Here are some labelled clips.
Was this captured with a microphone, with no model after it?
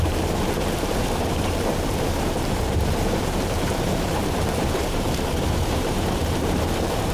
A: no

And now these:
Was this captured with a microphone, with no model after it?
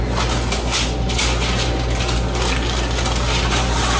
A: yes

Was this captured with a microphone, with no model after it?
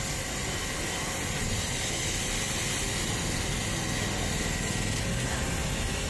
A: yes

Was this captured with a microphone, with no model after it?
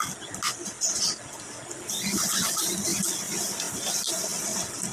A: yes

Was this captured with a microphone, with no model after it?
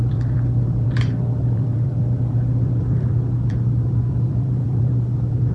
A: no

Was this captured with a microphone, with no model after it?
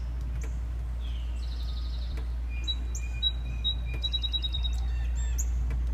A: yes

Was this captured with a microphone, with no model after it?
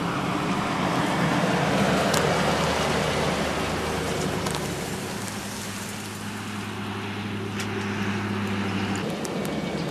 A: yes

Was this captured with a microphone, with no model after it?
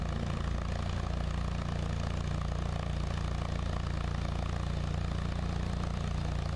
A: yes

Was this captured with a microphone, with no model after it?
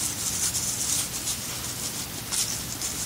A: yes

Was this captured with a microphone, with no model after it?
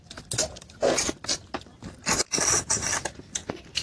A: no